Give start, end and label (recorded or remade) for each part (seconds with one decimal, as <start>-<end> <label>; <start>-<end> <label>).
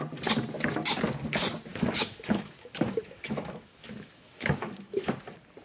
0.0-1.7 recorded; 1.7-5.1 remade; 5.1-5.6 recorded